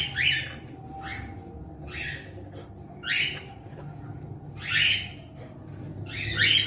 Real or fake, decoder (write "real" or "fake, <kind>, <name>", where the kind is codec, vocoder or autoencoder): real